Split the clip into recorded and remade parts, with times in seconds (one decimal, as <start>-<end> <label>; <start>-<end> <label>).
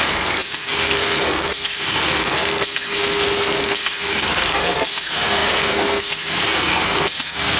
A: 0.0-7.6 remade